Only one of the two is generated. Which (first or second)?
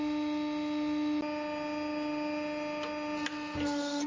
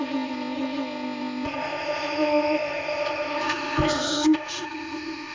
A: second